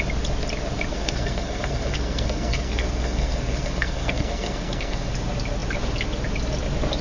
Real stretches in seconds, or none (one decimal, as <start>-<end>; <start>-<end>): 0.0-0.9; 5.1-7.0